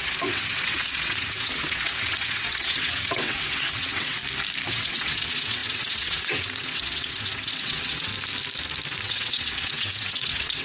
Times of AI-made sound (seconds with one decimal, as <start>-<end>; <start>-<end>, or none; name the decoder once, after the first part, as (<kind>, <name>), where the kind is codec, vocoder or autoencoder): 0.0-4.2 (vocoder, WaveNeXt); 4.7-8.1; 9.0-10.6